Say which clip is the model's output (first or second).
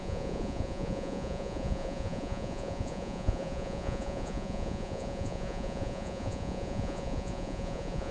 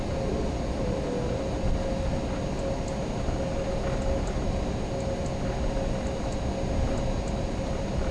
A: first